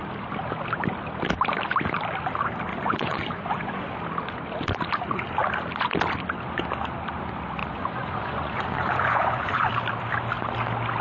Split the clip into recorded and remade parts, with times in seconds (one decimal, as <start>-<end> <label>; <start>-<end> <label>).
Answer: 0.0-2.7 recorded; 2.7-3.9 remade; 3.9-7.6 recorded; 7.6-9.7 remade; 9.7-11.0 recorded